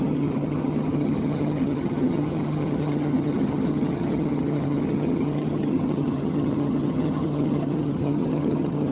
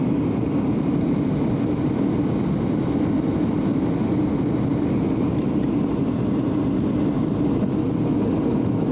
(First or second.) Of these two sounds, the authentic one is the second